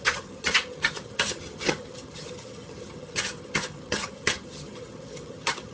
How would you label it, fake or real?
fake